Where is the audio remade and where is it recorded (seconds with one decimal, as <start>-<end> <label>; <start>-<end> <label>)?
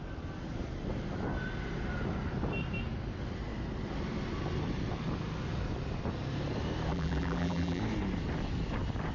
0.0-6.9 recorded; 6.9-7.8 remade; 7.8-9.1 recorded